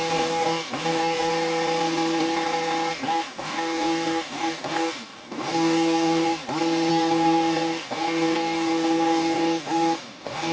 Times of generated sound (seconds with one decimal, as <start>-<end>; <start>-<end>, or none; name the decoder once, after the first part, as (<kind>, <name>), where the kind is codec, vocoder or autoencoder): 0.0-1.3 (codec, DAC); 2.9-6.4; 6.9-10.5